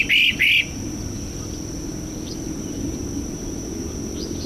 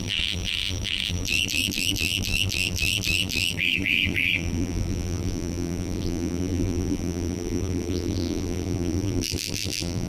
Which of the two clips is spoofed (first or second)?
second